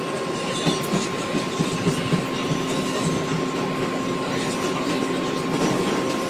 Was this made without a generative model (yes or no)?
yes